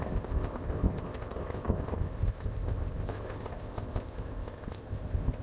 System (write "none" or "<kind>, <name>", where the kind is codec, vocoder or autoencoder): codec, ZipCodec